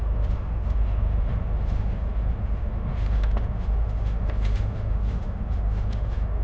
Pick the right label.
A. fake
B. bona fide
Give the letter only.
A